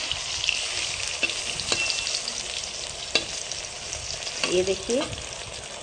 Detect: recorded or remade recorded